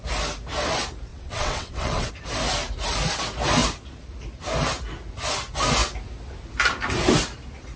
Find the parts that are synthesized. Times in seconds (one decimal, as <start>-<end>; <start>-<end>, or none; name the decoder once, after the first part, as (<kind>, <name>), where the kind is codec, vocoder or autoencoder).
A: 1.1-2.1 (vocoder, WaveNeXt)